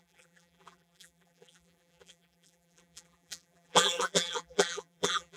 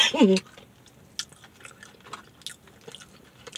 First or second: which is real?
second